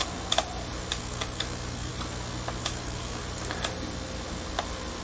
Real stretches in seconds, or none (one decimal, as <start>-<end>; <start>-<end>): 0.0-1.0; 1.9-2.6; 3.2-5.0